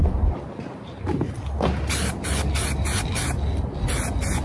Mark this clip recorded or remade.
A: recorded